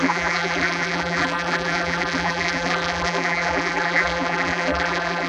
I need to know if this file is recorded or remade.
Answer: remade